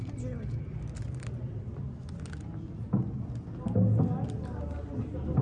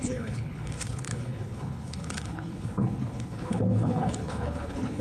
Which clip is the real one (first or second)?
first